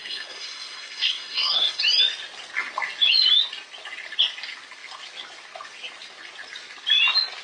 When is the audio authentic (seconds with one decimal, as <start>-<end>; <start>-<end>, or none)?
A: 1.8-7.4